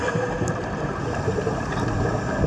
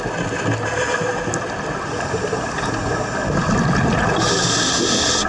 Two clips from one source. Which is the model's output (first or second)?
first